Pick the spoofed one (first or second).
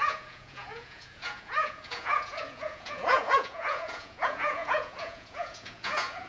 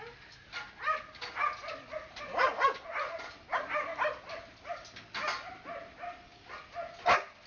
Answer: first